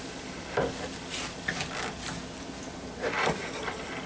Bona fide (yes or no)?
yes